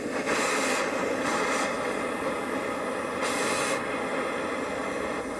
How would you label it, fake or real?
real